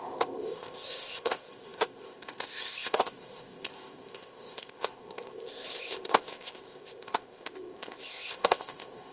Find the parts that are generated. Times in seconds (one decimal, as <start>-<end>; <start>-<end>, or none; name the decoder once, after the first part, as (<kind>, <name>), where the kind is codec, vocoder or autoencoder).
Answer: 0.0-9.1 (codec, ZipCodec)